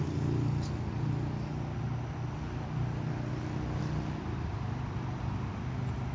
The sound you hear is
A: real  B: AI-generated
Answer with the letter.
A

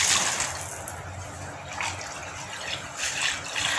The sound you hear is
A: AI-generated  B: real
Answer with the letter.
B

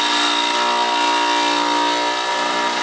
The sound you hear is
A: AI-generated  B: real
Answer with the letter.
B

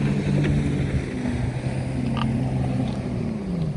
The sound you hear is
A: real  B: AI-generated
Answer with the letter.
A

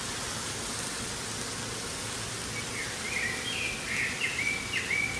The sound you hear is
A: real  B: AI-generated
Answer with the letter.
A